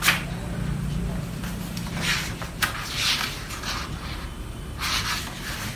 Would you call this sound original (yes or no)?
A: yes